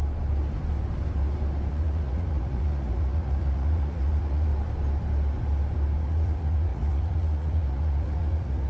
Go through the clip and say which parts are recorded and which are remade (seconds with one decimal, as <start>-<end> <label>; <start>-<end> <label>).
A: 0.0-1.7 recorded; 1.7-4.5 remade; 4.5-6.0 recorded; 6.0-8.7 remade